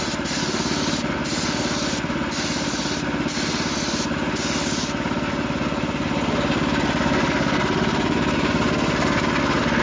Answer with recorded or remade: recorded